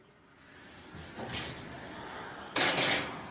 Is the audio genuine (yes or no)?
yes